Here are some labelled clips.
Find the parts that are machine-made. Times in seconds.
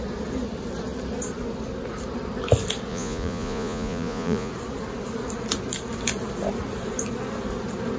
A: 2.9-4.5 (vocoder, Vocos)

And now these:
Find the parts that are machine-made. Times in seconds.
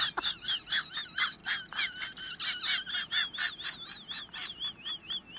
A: 4.4-5.4 (vocoder, BigVGAN v2)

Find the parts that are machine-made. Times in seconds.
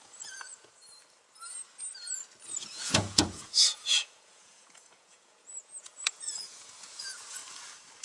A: 0.0-0.8 (vocoder, Vocos); 2.6-7.4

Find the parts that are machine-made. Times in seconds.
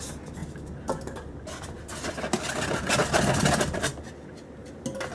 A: none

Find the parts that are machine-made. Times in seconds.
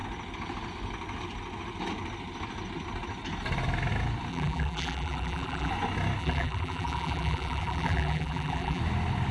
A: 4.3-5.7 (vocoder, BigVGAN v2); 6.2-8.8